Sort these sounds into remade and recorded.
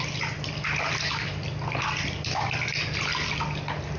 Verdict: recorded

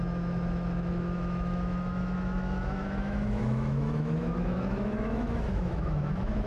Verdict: remade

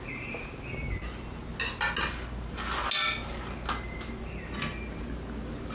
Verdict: recorded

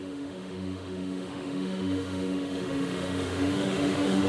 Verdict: remade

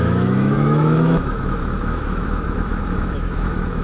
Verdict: remade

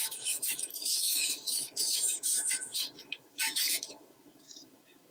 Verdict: remade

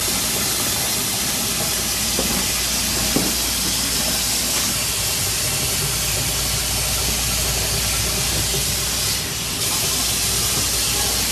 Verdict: recorded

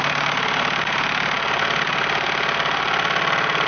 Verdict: recorded